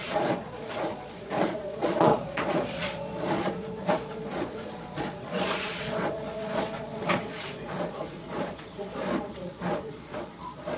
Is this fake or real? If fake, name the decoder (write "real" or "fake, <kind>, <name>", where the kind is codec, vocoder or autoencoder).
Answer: fake, vocoder, Vocos